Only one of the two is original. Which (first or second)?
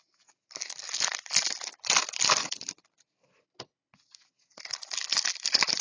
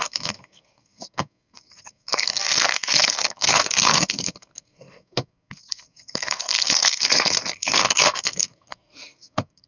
first